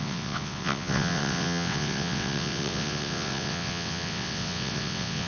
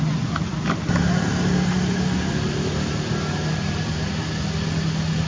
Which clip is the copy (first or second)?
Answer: first